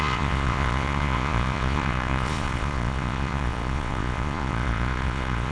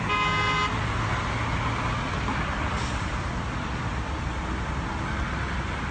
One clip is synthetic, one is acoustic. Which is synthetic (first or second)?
first